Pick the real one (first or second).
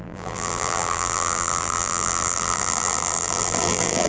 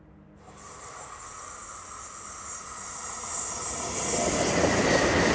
second